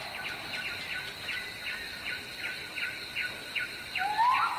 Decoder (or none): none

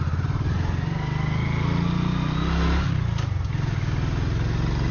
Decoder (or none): none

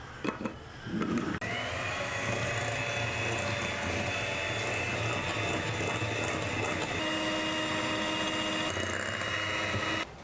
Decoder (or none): none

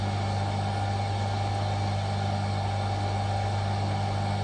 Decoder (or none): none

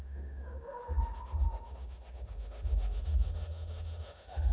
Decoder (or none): autoencoder, DAC-VAE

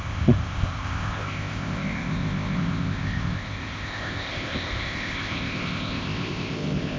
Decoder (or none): codec, ZipCodec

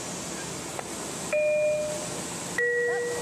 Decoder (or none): none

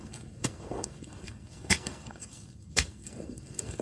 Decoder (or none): codec, SNAC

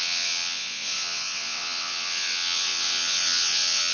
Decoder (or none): vocoder, WaveNeXt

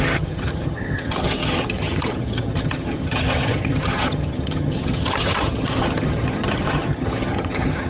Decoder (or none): vocoder, HiFi-GAN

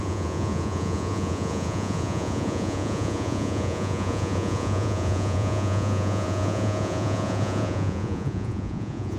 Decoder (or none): vocoder, Vocos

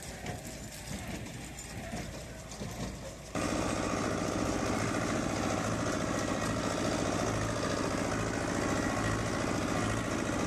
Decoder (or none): none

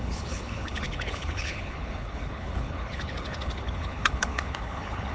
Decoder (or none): codec, HILCodec